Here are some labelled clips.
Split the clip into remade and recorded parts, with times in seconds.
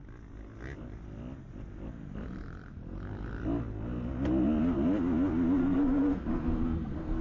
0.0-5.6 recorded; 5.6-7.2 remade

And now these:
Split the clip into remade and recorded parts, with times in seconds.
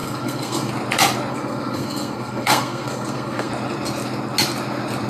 0.0-0.7 remade; 0.7-1.3 recorded; 1.3-3.5 remade; 3.5-5.1 recorded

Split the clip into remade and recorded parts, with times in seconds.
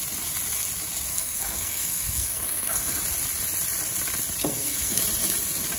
0.0-1.1 recorded; 1.1-3.0 remade; 3.0-4.4 recorded; 4.4-5.0 remade; 5.0-5.8 recorded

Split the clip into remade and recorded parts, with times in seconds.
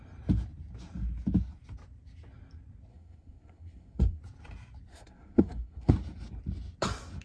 0.0-2.9 recorded; 2.9-4.2 remade; 4.2-4.9 recorded; 4.9-5.9 remade; 5.9-7.2 recorded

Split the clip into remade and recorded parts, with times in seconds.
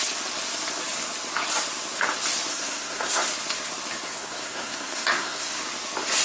0.0-2.5 recorded; 2.5-3.3 remade; 3.3-4.1 recorded; 4.1-5.6 remade; 5.6-6.2 recorded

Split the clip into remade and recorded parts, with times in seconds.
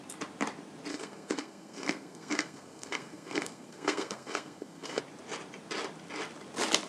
0.0-0.9 recorded; 0.9-5.0 remade; 5.0-6.9 recorded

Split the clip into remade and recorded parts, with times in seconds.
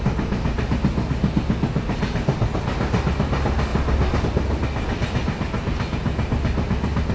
0.0-7.1 recorded